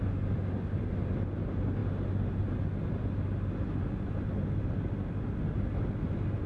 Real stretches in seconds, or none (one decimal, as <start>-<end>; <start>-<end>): 0.0-6.5